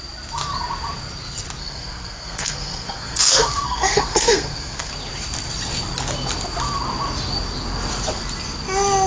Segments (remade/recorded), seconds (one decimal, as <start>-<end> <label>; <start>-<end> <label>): 0.0-1.6 recorded; 1.6-4.9 remade; 4.9-9.1 recorded